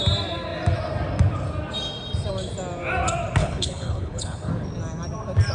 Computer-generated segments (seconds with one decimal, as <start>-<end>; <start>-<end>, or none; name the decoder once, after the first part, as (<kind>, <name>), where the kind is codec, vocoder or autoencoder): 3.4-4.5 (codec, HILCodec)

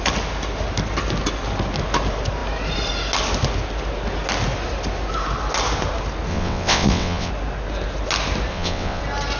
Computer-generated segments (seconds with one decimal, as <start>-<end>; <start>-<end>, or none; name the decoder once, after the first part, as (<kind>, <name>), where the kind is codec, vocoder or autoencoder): 6.3-7.3 (vocoder, WaveNeXt); 8.5-9.0

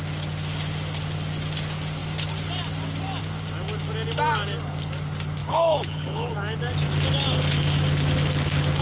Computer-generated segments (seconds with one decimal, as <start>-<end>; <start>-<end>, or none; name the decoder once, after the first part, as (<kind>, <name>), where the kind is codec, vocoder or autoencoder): 5.4-6.3 (codec, HILCodec)

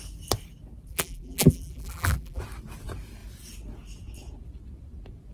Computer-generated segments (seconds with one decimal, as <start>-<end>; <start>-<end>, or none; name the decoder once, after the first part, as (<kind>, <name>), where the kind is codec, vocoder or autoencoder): 0.9-2.4 (vocoder, BigVGAN v2)